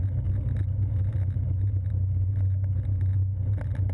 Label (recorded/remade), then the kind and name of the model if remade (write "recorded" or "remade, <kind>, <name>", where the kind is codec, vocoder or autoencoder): recorded